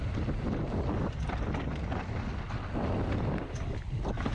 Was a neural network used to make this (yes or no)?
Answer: no